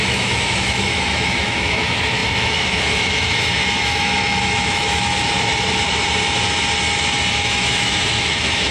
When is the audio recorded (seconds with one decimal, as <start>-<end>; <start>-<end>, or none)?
5.1-7.4